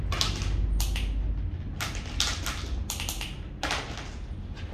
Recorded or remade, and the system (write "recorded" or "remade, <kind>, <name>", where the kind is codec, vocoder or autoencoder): recorded